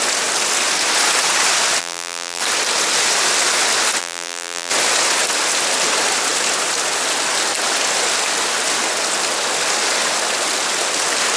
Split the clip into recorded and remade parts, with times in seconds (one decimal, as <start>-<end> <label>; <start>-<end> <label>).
0.0-1.8 recorded; 1.8-2.4 remade; 2.4-4.0 recorded; 4.0-4.7 remade; 4.7-11.4 recorded